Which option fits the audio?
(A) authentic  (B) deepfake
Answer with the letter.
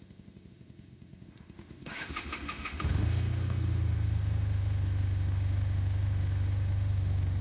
B